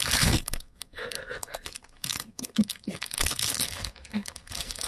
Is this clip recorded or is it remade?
remade